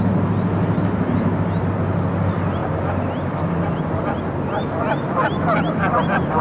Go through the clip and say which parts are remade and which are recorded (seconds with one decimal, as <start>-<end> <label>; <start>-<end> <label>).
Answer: 0.0-6.4 recorded